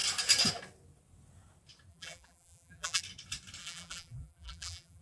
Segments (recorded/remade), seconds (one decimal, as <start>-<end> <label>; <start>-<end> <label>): 0.0-1.9 recorded; 1.9-3.0 remade; 3.0-3.6 recorded; 3.6-5.0 remade